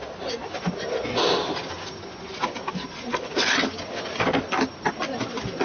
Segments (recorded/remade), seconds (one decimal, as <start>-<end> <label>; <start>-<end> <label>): 0.0-5.6 recorded